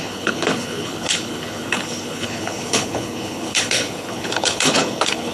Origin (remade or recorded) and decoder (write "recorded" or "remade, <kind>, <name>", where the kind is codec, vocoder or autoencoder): remade, codec, HILCodec